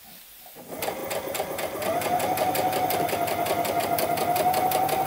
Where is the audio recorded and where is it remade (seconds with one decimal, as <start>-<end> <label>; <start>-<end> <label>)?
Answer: 0.0-5.1 recorded